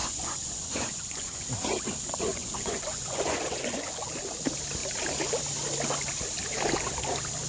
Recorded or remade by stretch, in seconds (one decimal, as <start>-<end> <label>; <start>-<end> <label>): 0.0-1.5 remade; 1.5-2.3 recorded; 2.3-4.2 remade; 4.2-7.5 recorded

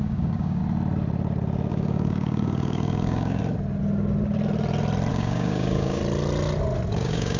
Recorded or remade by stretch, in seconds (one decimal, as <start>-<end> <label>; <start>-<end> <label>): 0.0-0.6 remade; 0.6-1.7 recorded; 1.7-3.4 remade; 3.4-5.1 recorded; 5.1-6.0 remade; 6.0-6.9 recorded; 6.9-7.4 remade